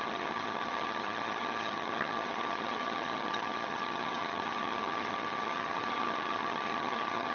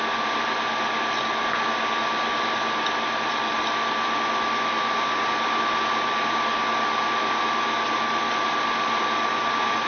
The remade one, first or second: first